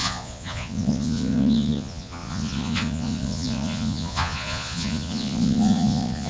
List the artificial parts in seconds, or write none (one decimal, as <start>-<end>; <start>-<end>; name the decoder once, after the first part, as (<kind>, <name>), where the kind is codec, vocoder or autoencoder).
0.0-6.3 (vocoder, Vocos)

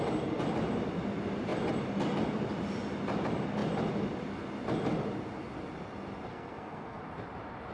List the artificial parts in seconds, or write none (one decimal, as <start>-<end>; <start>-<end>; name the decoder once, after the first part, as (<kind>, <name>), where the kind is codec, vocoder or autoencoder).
6.3-7.0 (codec, SNAC)

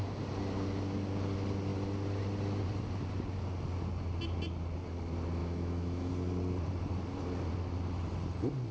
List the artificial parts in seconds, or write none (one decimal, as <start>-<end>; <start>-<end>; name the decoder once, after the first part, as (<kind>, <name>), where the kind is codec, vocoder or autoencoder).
5.4-6.1 (autoencoder, DAC-VAE)

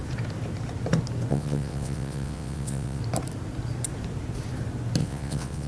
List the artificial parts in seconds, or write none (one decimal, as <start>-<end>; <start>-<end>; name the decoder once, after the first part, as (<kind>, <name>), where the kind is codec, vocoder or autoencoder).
1.3-3.0 (vocoder, WaveNeXt); 5.0-5.7